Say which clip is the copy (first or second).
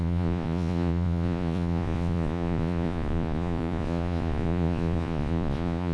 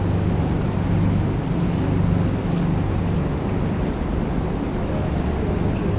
first